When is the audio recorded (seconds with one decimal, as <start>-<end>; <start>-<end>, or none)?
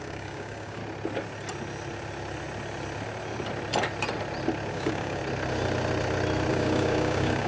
0.8-4.7; 5.2-6.5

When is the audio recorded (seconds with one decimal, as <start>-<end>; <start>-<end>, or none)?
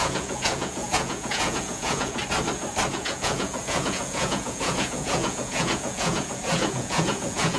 2.2-2.9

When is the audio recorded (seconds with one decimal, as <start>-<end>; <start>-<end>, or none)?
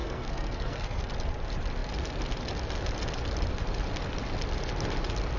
1.0-5.4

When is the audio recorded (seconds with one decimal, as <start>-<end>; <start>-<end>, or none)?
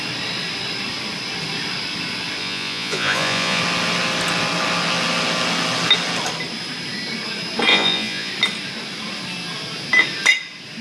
0.0-2.4; 3.6-7.7; 8.3-10.8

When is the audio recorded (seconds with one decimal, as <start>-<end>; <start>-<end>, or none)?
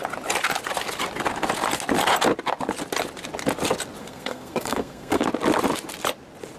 0.0-4.0; 5.2-6.6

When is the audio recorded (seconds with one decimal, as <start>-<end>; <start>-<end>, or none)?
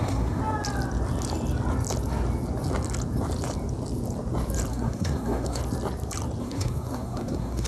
0.4-4.7; 5.6-6.4